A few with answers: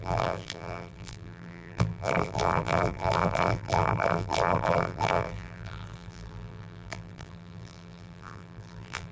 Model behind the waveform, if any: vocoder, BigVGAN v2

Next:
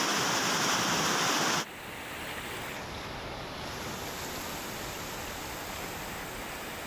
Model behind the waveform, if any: none